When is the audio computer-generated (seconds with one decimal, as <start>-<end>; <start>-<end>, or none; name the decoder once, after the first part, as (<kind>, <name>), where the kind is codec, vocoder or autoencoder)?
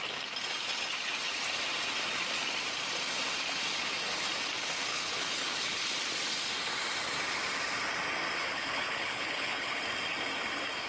4.9-5.8 (codec, HILCodec); 8.4-9.8